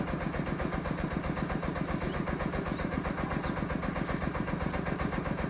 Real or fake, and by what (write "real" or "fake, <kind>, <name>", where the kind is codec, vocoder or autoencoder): real